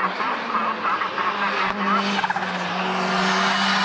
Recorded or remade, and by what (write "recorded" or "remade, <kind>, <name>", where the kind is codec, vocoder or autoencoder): recorded